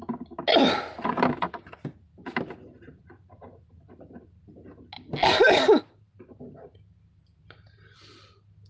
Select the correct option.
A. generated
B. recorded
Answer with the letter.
B